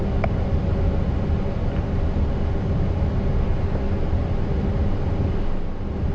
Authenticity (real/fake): real